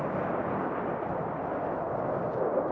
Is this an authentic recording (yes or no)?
yes